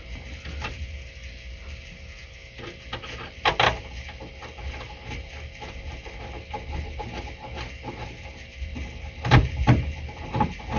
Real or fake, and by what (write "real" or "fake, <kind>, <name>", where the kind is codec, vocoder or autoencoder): real